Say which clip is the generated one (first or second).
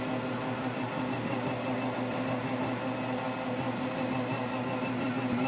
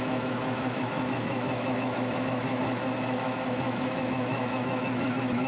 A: second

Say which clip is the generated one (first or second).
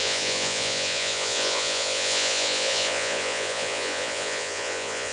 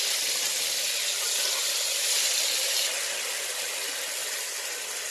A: first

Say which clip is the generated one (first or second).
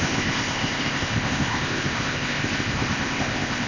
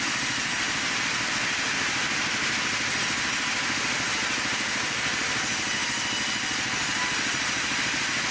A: first